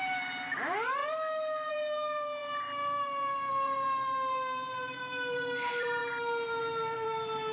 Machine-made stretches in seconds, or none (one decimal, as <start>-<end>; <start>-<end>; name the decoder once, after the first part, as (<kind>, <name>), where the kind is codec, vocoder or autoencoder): 0.0-1.0 (vocoder, BigVGAN v2); 1.7-7.5